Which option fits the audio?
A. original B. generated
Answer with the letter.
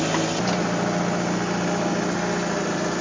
A